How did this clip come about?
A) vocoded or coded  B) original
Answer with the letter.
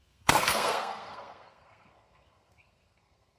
A